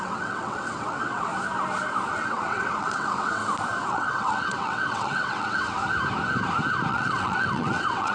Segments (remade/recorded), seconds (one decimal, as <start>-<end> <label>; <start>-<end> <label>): 0.0-1.3 remade; 1.3-2.1 recorded; 2.1-3.4 remade; 3.4-3.9 recorded; 3.9-5.8 remade; 5.8-6.9 recorded; 6.9-8.1 remade

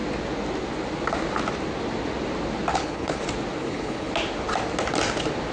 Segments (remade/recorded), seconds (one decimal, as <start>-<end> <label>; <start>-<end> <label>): 0.0-2.7 recorded; 2.7-3.2 remade; 3.2-3.6 recorded; 3.6-4.1 remade; 4.1-5.5 recorded

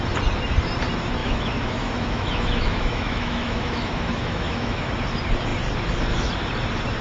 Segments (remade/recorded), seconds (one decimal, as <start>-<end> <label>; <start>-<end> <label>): 0.0-1.2 recorded; 1.2-4.9 remade; 4.9-7.0 recorded

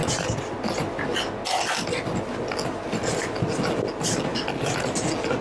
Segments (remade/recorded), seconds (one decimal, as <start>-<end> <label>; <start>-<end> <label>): 0.0-5.4 recorded